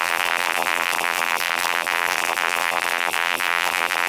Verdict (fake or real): fake